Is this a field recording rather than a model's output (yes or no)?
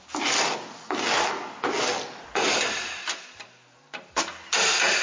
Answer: yes